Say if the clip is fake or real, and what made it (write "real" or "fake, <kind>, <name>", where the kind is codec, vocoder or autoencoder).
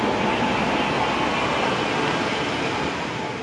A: real